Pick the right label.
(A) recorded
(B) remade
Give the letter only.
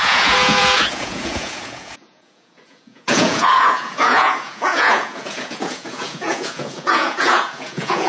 B